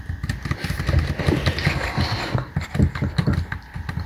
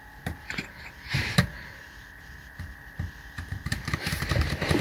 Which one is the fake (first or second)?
second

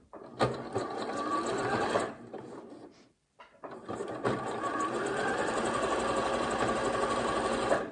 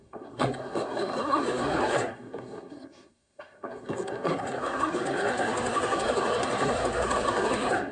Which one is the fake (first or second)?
second